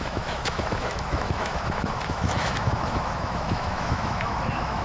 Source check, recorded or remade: remade